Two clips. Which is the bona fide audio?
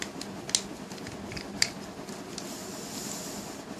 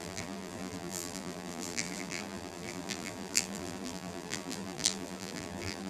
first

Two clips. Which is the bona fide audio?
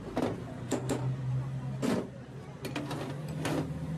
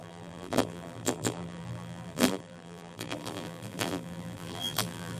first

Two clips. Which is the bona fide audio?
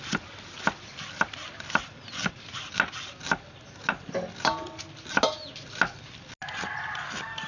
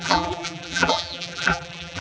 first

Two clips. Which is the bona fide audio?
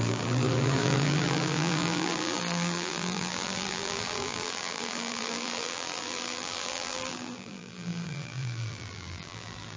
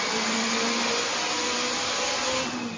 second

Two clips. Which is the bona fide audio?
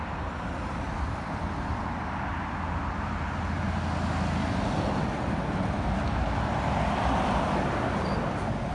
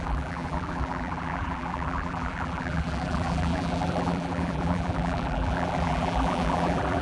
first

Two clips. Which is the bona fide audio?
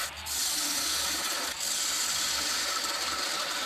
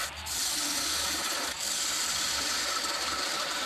first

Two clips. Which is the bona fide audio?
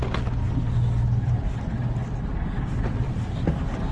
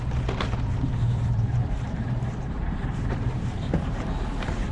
first